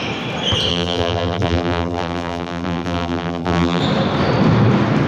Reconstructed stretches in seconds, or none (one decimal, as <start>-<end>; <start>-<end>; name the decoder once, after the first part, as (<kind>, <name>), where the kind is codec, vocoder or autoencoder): 0.7-3.8 (vocoder, BigVGAN v2)